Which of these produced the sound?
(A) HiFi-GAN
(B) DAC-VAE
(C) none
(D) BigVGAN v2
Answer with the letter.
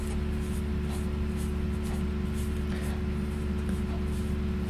C